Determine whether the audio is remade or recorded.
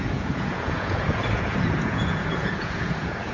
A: remade